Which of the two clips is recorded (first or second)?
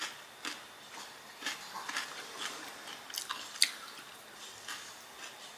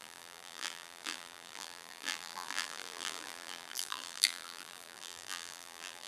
first